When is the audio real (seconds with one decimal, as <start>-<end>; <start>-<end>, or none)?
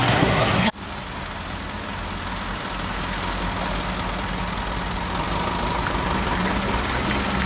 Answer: 0.7-7.5